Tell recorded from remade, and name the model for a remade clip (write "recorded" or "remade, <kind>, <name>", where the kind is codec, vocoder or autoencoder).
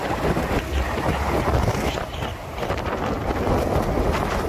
recorded